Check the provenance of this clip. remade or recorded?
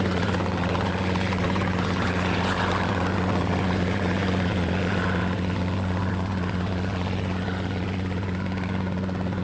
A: remade